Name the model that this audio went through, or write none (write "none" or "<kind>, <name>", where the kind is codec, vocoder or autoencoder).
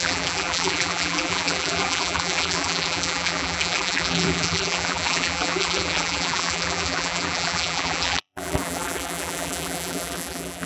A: vocoder, BigVGAN v2